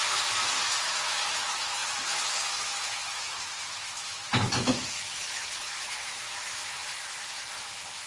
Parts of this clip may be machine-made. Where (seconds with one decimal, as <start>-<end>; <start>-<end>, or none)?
0.8-8.1